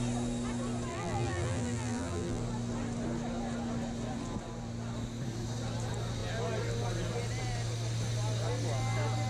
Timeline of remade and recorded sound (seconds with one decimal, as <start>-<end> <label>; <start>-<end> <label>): 0.0-0.9 recorded; 0.9-2.4 remade; 2.4-9.3 recorded